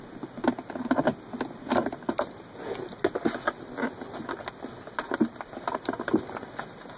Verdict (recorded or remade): recorded